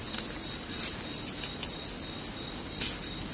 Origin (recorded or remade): recorded